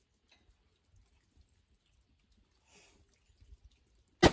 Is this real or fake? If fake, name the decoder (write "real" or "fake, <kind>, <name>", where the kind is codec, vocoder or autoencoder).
real